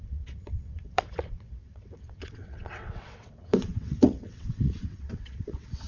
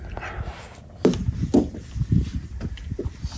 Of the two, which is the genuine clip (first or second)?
second